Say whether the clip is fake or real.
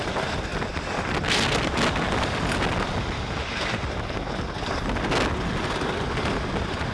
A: real